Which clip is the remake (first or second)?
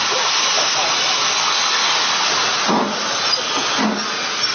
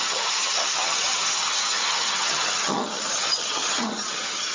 second